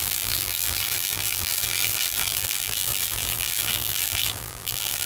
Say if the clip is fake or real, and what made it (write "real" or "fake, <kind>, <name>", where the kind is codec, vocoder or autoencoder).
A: fake, vocoder, BigVGAN v2